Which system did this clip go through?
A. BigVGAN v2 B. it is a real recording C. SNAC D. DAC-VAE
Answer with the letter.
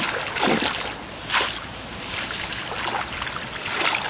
B